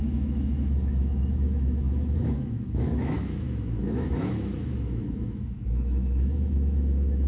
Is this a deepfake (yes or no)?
yes